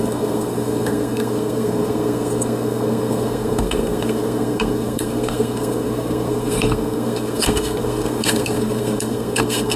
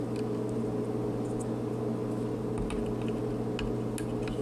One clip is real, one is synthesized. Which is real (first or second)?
second